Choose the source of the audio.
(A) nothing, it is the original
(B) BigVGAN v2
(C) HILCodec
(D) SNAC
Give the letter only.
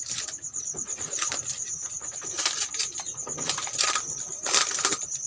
B